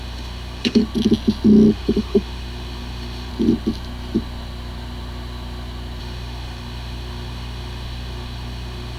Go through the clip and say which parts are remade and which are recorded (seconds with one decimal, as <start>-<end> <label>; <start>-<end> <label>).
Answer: 0.0-0.8 remade; 0.8-1.7 recorded; 1.7-3.3 remade; 3.3-6.0 recorded; 6.0-9.0 remade